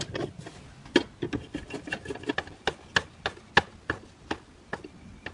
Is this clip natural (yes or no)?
yes